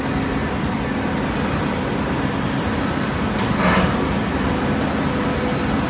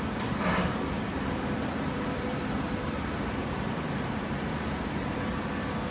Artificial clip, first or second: second